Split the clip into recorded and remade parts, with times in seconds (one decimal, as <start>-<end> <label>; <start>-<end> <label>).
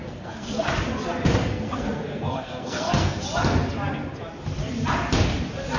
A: 0.0-0.7 remade; 0.7-1.4 recorded; 1.4-3.2 remade; 3.2-5.8 recorded